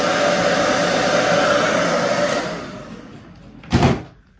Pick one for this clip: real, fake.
real